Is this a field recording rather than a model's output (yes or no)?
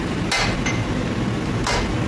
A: yes